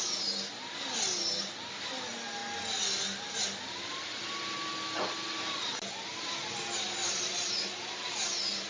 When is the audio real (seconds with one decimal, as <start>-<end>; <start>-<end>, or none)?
0.0-8.7